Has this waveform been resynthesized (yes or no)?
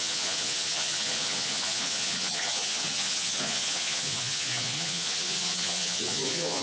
yes